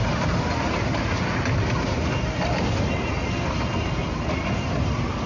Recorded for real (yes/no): yes